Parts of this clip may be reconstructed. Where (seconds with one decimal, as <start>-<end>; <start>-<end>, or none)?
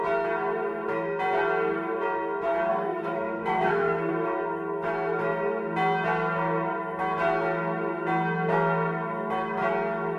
2.7-4.1